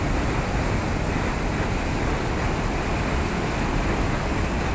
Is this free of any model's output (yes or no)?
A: yes